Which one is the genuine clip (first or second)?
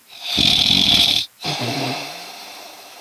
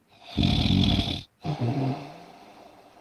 second